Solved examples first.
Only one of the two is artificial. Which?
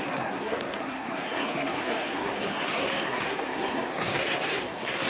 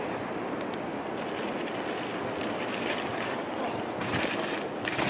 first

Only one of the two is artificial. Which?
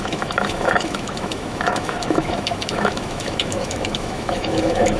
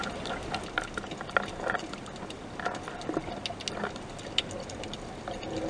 first